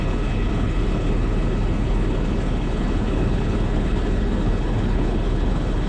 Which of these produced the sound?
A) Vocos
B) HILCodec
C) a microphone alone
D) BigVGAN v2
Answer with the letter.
B